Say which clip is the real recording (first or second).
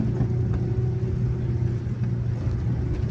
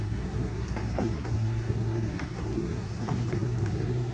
first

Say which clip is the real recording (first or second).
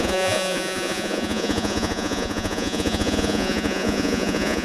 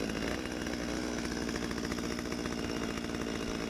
second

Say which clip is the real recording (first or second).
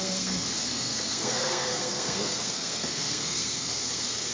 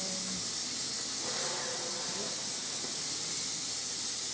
second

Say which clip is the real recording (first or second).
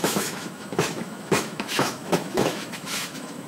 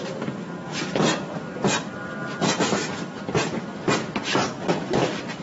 second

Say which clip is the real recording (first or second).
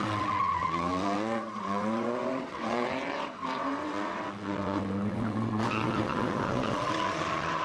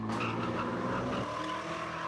second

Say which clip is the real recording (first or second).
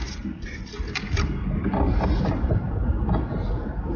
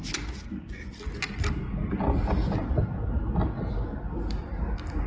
second